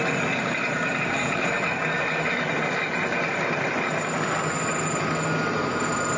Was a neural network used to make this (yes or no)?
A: no